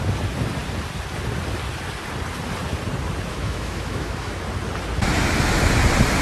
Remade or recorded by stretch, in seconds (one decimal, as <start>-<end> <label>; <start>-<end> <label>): 0.0-3.3 recorded; 3.3-4.4 remade; 4.4-6.2 recorded